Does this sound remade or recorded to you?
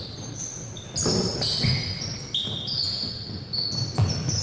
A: recorded